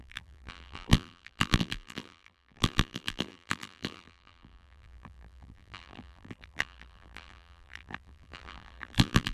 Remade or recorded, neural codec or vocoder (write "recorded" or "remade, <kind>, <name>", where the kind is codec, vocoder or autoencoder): remade, vocoder, BigVGAN v2